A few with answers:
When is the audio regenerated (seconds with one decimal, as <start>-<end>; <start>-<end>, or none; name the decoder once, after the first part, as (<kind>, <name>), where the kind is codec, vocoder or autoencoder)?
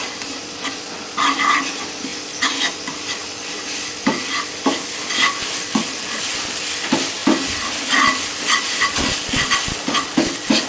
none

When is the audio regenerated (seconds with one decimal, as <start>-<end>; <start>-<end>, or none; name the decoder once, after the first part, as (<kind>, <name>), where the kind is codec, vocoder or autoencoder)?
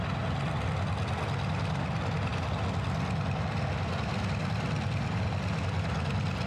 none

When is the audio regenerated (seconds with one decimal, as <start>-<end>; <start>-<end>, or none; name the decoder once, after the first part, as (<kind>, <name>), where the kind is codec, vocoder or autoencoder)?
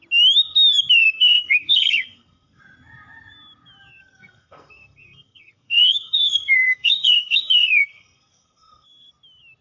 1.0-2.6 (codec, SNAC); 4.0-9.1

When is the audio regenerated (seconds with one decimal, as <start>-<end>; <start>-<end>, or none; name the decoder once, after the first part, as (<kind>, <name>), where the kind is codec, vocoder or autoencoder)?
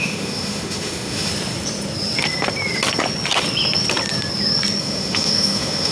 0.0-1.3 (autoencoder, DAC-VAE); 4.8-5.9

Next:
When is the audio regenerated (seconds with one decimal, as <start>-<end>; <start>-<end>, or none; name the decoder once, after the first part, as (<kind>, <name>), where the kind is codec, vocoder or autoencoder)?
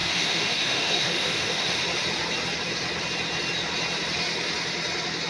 0.0-1.8 (autoencoder, DAC-VAE)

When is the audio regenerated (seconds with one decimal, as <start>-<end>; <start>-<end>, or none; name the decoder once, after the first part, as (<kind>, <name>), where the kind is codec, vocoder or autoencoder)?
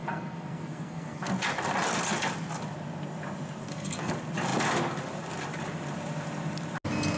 0.0-1.3 (codec, SNAC); 3.6-4.1